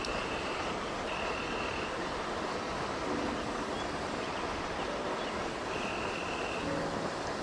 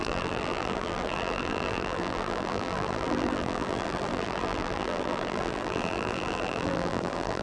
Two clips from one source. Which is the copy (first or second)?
second